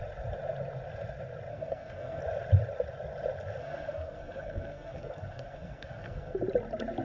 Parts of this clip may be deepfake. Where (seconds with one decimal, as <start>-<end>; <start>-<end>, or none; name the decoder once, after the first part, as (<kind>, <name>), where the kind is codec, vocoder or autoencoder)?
1.5-2.2 (codec, SNAC); 3.6-6.4